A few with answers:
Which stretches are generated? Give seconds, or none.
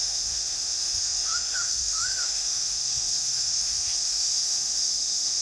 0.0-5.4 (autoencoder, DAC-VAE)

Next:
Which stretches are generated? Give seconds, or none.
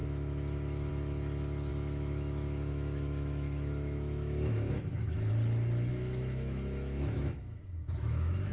0.0-0.9 (autoencoder, DAC-VAE); 1.7-5.3; 5.9-8.5